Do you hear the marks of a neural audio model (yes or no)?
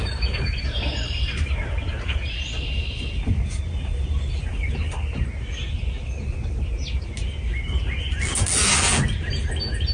no